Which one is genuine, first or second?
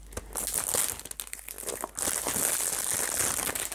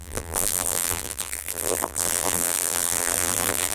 first